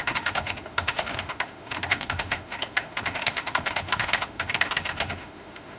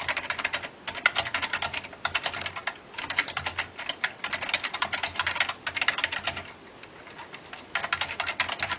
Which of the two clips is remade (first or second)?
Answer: first